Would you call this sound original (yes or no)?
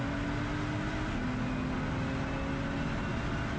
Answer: yes